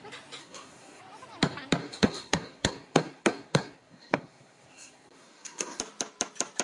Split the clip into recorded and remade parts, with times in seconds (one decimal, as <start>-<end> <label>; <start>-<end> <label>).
0.0-0.4 recorded; 0.4-1.0 remade; 1.0-1.8 recorded; 1.8-5.8 remade; 5.8-6.6 recorded